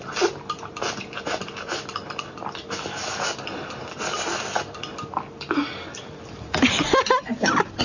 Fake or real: real